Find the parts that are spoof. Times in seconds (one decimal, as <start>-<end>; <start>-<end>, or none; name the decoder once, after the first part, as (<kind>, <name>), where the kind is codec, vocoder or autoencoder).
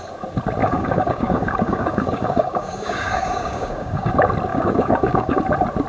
0.6-4.1 (codec, DAC); 4.5-5.4